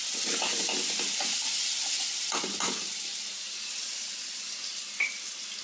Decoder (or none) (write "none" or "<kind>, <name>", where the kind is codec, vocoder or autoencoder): none